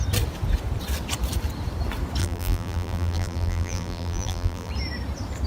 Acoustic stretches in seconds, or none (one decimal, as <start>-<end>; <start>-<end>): 0.0-2.2; 4.7-5.5